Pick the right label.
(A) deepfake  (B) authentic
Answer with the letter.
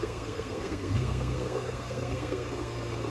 A